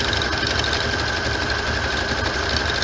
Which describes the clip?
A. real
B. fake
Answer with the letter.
A